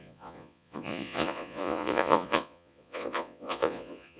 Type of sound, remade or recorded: remade